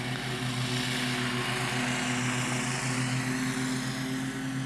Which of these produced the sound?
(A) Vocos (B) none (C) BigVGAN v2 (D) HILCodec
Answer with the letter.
B